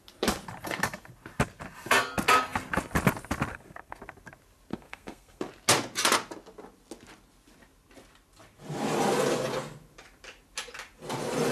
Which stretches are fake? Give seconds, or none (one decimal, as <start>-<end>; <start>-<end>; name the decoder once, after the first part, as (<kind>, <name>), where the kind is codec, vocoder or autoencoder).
3.5-4.0 (codec, SNAC); 4.7-5.4